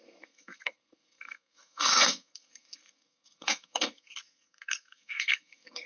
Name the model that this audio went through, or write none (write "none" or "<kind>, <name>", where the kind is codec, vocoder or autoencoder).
codec, SNAC